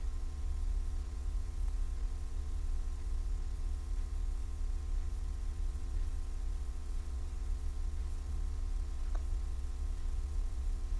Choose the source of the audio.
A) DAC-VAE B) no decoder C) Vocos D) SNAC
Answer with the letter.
C